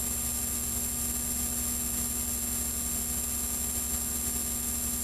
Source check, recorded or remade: recorded